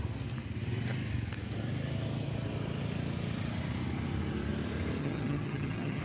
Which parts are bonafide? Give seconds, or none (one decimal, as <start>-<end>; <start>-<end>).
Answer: 0.0-5.0